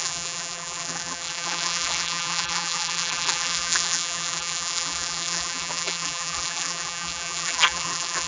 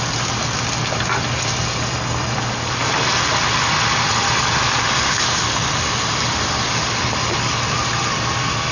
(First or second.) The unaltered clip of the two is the second